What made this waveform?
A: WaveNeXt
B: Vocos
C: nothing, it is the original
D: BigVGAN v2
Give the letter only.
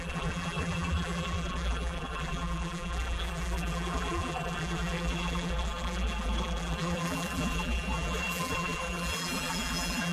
D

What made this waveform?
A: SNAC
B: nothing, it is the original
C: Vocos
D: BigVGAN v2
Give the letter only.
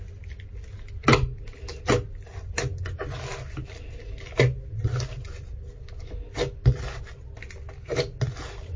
B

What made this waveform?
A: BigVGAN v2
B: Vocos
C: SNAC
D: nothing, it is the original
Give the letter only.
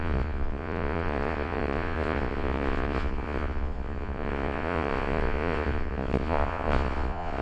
B